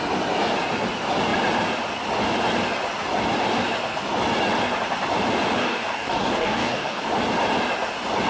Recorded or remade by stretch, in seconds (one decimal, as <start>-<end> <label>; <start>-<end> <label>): 0.0-5.6 recorded; 5.6-7.0 remade; 7.0-8.3 recorded